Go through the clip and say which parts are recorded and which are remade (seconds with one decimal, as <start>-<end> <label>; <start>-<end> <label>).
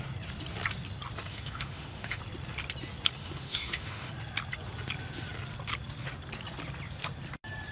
0.0-1.3 recorded; 1.3-2.2 remade; 2.2-3.2 recorded; 3.2-4.1 remade; 4.1-7.7 recorded